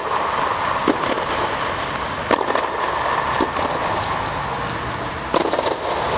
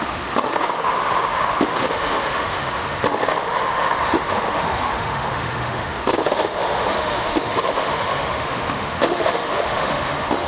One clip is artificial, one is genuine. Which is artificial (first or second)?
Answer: second